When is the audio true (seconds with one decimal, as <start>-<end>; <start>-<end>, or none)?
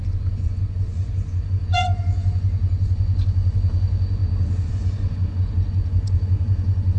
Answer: 4.2-4.7